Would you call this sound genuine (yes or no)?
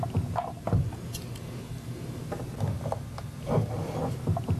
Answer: yes